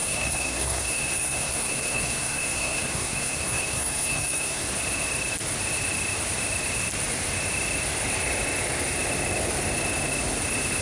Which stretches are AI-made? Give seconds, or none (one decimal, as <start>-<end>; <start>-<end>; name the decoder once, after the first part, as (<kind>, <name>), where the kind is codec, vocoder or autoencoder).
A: 0.0-4.7 (codec, SNAC)